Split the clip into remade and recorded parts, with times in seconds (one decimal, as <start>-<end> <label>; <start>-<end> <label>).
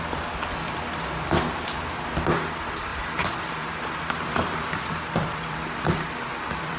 0.0-2.9 recorded; 2.9-6.8 remade